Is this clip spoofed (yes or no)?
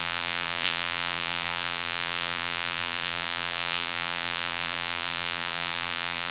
yes